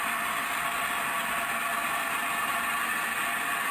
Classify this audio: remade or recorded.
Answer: recorded